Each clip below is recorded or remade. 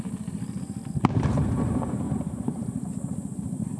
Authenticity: remade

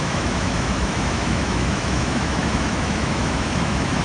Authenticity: remade